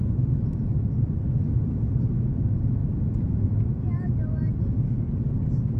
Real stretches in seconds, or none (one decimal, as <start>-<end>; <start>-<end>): 0.0-0.5; 1.3-5.8